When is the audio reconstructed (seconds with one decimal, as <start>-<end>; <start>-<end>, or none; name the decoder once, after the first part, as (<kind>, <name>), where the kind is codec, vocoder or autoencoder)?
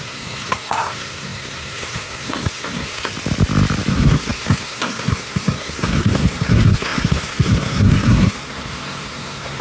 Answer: 0.0-3.1 (codec, SNAC); 3.9-9.6